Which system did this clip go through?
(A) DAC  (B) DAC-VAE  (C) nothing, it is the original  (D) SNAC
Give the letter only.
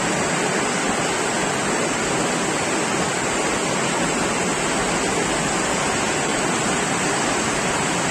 C